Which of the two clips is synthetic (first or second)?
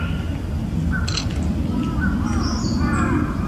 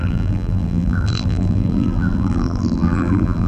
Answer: second